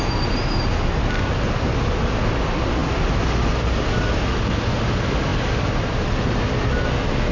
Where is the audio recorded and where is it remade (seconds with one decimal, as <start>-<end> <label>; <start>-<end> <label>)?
0.0-7.3 recorded